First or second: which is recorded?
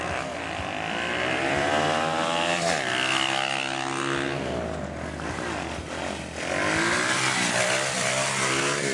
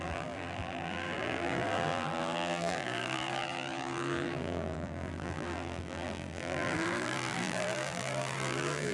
first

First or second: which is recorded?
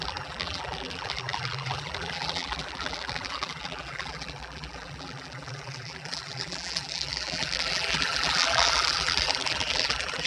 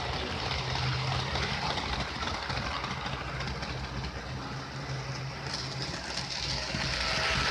second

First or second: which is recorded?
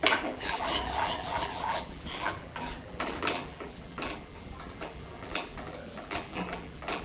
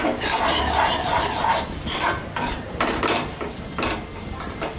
second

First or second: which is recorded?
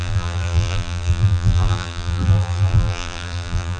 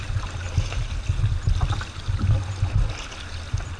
second